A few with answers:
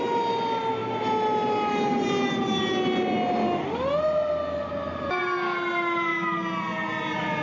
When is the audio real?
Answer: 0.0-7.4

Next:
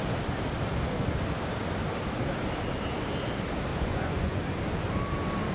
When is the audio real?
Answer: 0.0-3.7; 4.4-5.5

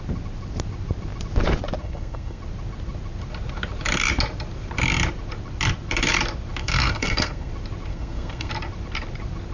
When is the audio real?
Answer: 0.0-1.8; 2.4-6.6; 7.5-7.9; 8.5-9.5

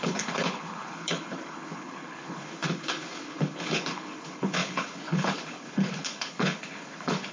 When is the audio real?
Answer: none

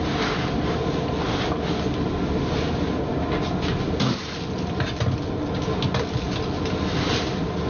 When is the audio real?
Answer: 0.0-7.7

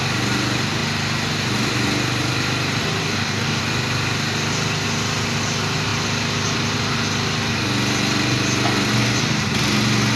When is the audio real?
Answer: 0.0-3.0; 3.6-10.2